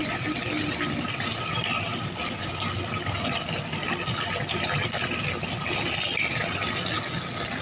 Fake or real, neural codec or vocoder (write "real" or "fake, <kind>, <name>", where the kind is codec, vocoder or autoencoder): real